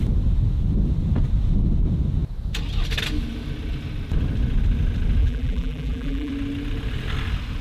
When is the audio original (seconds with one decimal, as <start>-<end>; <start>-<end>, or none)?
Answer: 0.0-5.2; 6.3-7.6